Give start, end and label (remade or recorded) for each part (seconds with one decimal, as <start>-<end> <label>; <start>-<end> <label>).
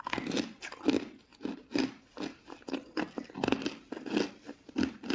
0.0-5.1 recorded